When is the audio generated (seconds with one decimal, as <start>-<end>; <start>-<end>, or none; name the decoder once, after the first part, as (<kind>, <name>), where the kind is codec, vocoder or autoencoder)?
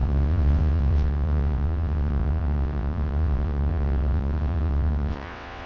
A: 0.0-5.7 (vocoder, WaveNeXt)